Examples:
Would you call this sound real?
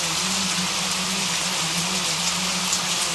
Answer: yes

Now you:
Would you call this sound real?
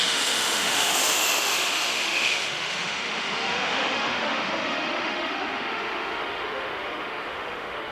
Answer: no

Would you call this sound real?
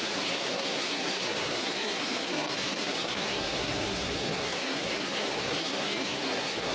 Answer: no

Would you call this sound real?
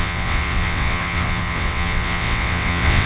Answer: no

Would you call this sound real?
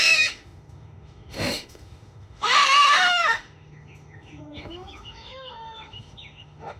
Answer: no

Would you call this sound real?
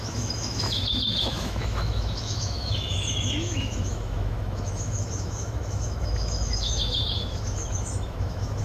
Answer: no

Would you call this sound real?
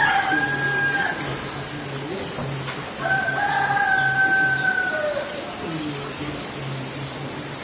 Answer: yes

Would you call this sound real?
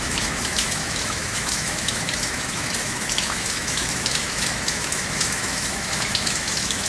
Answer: no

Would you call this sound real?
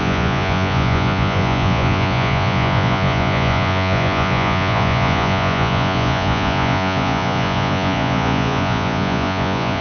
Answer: no